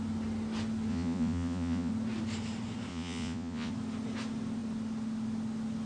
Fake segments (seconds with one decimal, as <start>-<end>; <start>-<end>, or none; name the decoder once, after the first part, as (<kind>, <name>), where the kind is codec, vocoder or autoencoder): 0.9-1.9 (vocoder, Vocos); 2.9-3.7